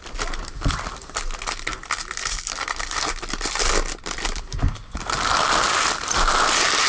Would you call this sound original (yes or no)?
yes